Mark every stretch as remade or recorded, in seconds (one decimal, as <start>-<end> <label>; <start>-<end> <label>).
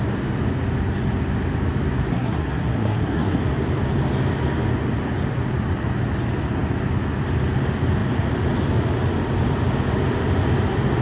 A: 0.0-2.1 recorded; 2.1-3.4 remade; 3.4-11.0 recorded